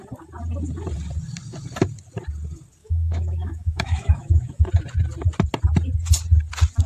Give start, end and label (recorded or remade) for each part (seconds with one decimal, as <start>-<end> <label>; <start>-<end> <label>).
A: 0.0-2.8 recorded; 2.8-4.7 remade; 4.7-6.9 recorded